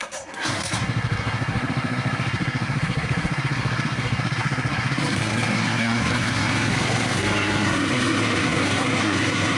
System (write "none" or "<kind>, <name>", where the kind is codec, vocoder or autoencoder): codec, SNAC